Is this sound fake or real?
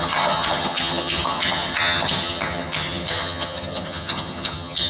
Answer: fake